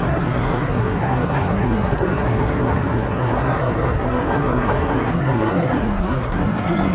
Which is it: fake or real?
fake